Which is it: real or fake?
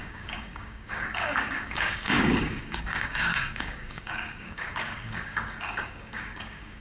fake